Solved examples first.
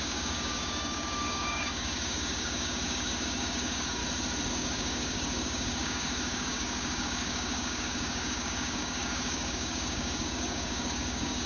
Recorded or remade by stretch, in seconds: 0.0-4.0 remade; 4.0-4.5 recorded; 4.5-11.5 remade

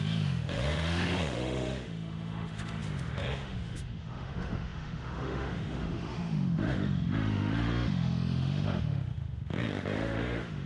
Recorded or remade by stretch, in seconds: 0.0-10.7 remade

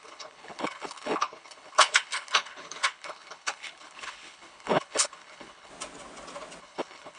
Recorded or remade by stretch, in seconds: 0.0-5.7 remade; 5.7-6.6 recorded; 6.6-7.2 remade

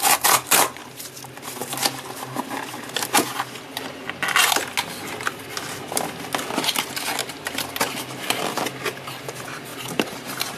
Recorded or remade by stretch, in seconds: 0.0-7.2 recorded; 7.2-8.0 remade; 8.0-9.7 recorded; 9.7-10.6 remade

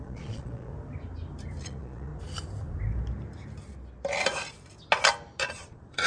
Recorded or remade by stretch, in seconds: 0.0-0.7 remade; 0.7-1.6 recorded; 1.6-2.1 remade; 2.1-5.4 recorded; 5.4-6.1 remade